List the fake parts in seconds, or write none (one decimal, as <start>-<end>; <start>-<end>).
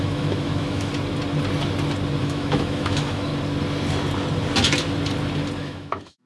0.0-0.9; 2.2-3.3; 5.6-6.3